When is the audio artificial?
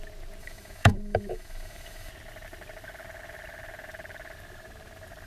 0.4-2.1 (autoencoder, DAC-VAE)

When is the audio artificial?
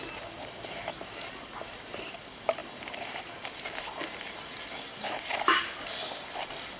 none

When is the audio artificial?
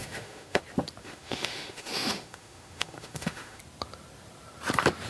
0.0-0.6 (autoencoder, DAC-VAE); 1.0-3.6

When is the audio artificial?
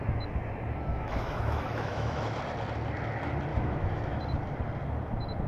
0.9-2.4 (autoencoder, DAC-VAE); 3.5-4.2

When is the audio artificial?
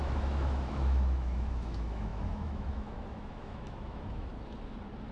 0.0-4.3 (autoencoder, DAC-VAE)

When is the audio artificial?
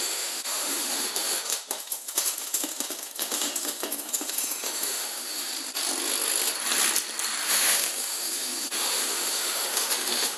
0.0-5.5 (autoencoder, DAC-VAE); 7.5-10.4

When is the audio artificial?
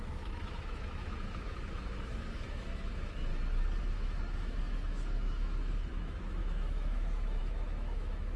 0.0-3.3 (autoencoder, DAC-VAE); 3.8-8.4